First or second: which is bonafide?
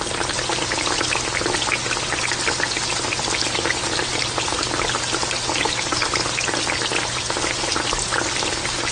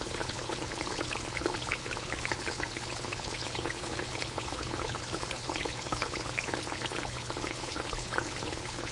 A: first